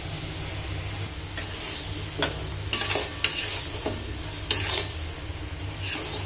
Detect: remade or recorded recorded